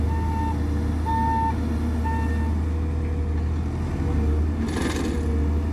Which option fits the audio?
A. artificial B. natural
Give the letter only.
B